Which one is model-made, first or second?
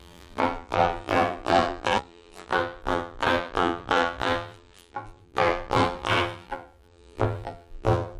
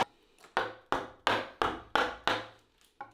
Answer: first